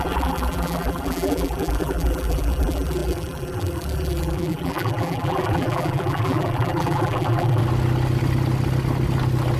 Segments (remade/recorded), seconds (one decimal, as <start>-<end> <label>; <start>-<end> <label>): 0.0-7.6 remade; 7.6-9.6 recorded